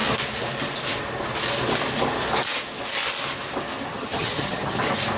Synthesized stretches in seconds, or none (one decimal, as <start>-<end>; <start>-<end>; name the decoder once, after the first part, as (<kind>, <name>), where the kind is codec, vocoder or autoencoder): 3.9-4.8 (vocoder, HiFi-GAN)